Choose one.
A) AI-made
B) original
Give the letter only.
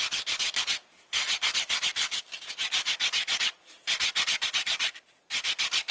B